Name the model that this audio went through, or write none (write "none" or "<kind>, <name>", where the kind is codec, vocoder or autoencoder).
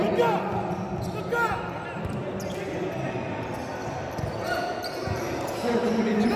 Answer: none